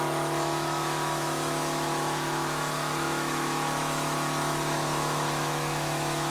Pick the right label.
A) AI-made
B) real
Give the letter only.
A